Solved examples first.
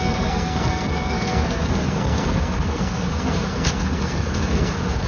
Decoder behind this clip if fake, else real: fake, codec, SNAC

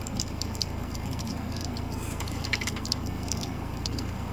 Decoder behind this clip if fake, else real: fake, codec, SNAC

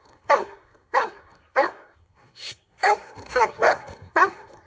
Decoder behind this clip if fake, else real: fake, codec, SNAC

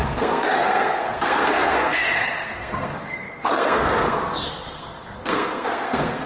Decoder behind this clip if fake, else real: fake, codec, SNAC